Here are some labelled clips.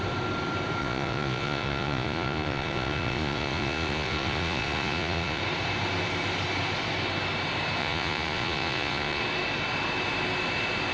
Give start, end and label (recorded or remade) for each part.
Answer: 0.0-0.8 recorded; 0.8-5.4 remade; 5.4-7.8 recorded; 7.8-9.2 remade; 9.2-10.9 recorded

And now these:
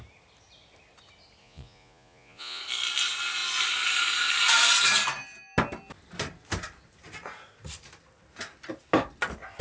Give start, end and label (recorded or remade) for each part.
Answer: 0.0-1.4 recorded; 1.4-2.6 remade; 2.6-9.6 recorded